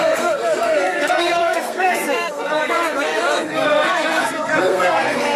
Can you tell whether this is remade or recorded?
remade